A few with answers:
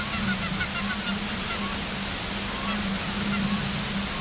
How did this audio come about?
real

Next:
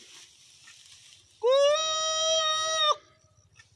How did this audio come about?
real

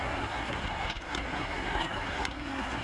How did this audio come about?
fake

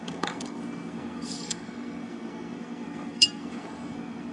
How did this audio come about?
fake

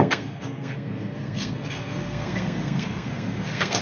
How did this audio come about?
fake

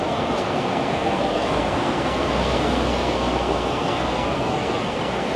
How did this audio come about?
fake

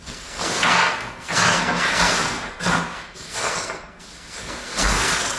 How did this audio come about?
fake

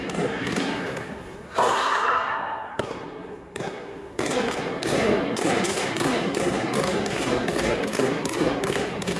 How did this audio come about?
fake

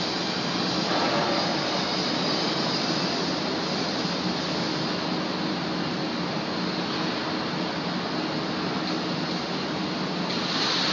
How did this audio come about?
real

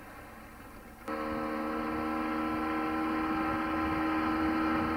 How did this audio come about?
real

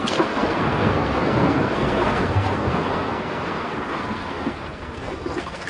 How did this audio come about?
fake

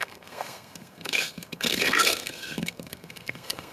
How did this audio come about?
fake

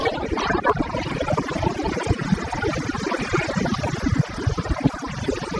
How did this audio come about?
real